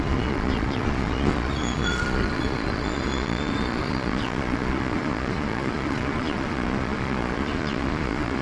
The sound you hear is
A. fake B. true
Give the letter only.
A